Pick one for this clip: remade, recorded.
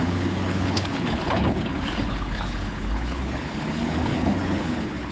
remade